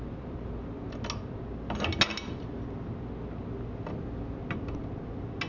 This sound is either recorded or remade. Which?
recorded